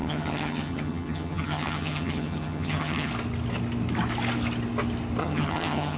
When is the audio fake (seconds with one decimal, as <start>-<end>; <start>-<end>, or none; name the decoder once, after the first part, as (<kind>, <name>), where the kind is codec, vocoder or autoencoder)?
0.0-3.1 (vocoder, HiFi-GAN); 5.2-6.0